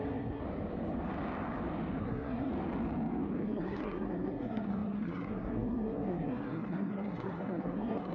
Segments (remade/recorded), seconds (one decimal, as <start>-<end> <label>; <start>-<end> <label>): 0.0-0.4 remade; 0.4-2.0 recorded; 2.0-2.5 remade; 2.5-3.4 recorded; 3.4-8.1 remade